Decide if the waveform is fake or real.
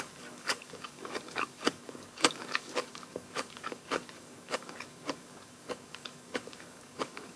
fake